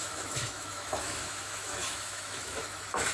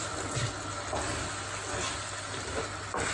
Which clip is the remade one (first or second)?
first